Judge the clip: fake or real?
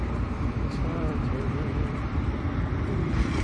fake